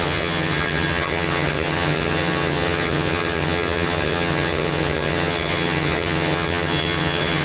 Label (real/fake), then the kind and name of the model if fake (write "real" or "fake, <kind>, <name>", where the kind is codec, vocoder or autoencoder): fake, vocoder, HiFi-GAN